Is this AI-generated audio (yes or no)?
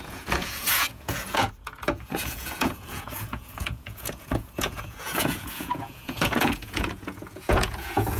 yes